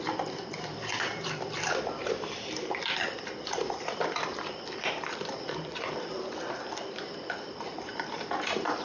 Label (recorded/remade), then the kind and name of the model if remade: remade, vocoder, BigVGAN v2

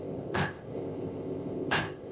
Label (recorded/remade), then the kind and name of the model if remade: remade, codec, ZipCodec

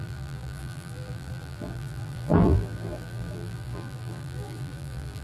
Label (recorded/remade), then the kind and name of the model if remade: remade, vocoder, BigVGAN v2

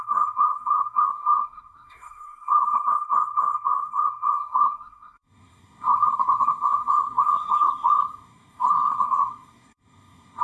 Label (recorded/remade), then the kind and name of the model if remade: remade, codec, SNAC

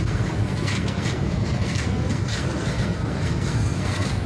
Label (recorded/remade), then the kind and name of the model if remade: remade, codec, SNAC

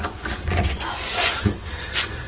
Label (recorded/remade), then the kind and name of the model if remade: remade, vocoder, Vocos